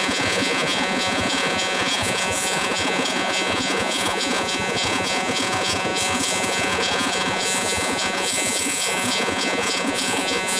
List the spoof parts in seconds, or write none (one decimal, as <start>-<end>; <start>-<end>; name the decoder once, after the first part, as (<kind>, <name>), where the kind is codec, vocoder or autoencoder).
0.0-10.6 (vocoder, Vocos)